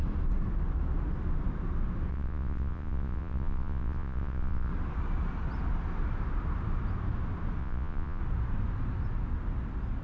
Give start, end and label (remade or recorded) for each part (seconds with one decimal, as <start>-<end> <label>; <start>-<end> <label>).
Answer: 0.0-2.1 recorded; 2.1-4.7 remade; 4.7-7.6 recorded; 7.6-8.2 remade; 8.2-10.0 recorded